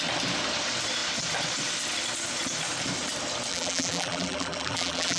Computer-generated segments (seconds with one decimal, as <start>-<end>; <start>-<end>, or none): 3.5-5.2